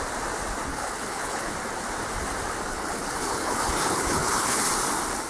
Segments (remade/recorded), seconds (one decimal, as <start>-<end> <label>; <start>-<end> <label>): 0.0-0.7 recorded; 0.7-1.5 remade; 1.5-2.7 recorded; 2.7-4.6 remade; 4.6-5.3 recorded